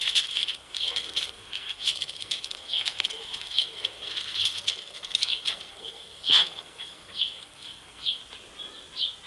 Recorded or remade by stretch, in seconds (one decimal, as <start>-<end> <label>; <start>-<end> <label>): 0.0-8.2 remade; 8.2-9.3 recorded